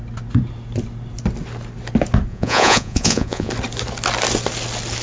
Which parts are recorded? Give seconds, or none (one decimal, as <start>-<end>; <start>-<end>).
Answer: 0.0-2.3; 3.5-5.0